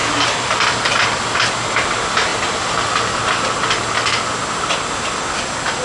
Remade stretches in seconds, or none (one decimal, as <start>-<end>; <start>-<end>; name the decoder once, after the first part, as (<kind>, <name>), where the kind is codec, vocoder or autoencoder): none